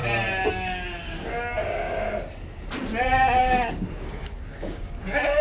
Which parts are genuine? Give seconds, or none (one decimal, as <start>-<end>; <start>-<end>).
0.0-0.5; 1.3-3.4